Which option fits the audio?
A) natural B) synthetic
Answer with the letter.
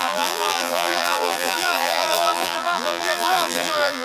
B